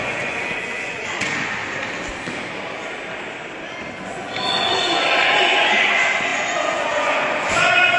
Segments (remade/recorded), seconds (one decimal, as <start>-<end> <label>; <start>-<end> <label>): 0.0-1.6 remade; 1.6-4.0 recorded; 4.0-8.0 remade